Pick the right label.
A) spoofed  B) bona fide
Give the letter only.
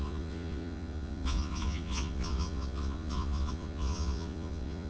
A